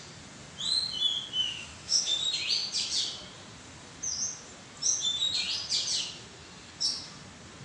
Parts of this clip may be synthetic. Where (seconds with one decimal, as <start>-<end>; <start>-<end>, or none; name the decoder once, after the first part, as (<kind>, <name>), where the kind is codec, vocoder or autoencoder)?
1.4-2.2 (autoencoder, DAC-VAE)